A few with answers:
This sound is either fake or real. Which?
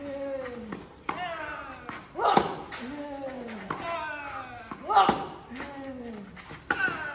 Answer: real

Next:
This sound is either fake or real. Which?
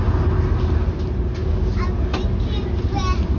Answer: real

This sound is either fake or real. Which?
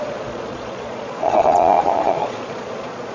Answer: fake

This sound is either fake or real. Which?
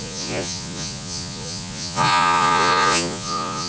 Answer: fake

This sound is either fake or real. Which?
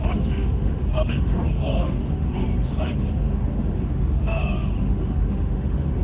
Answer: fake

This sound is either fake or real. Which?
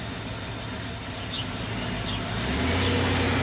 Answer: real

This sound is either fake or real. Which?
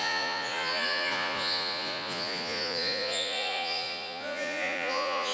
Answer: fake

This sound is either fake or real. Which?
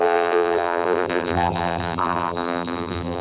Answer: fake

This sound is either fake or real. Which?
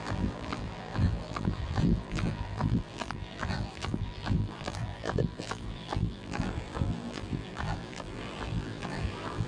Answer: fake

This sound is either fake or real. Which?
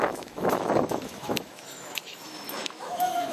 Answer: fake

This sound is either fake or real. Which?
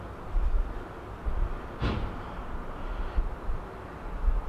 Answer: real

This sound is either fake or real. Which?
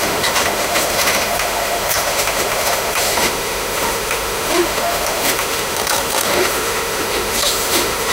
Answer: fake